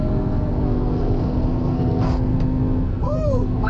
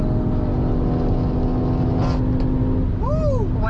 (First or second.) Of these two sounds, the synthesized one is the first